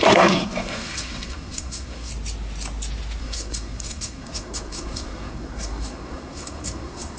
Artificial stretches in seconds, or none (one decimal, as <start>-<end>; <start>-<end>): 0.0-2.1; 3.2-7.2